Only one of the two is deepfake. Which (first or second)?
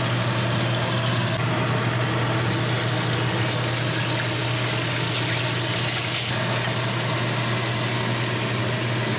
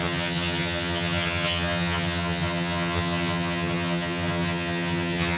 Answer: second